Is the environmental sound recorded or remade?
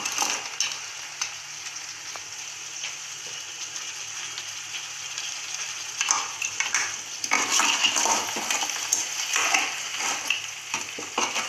recorded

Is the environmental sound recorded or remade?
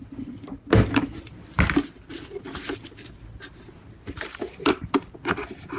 recorded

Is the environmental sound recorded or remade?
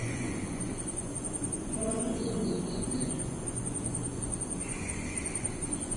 remade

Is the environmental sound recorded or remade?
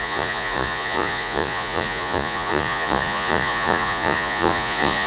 remade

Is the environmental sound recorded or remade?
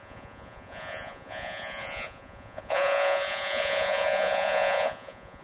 remade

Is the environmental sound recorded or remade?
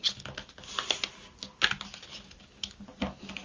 recorded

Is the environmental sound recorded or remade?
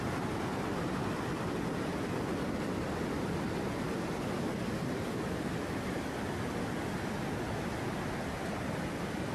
recorded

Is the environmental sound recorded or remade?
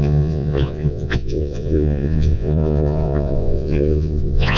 remade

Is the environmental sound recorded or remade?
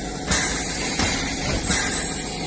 recorded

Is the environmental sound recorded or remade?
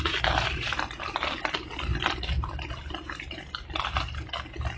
recorded